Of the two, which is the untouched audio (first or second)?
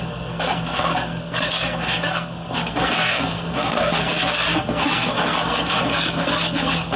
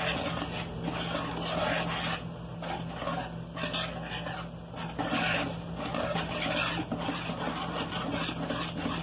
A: second